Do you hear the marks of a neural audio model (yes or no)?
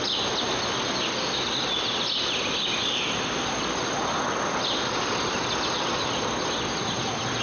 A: no